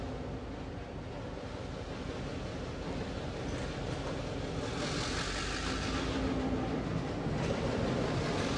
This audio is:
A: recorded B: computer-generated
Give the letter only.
A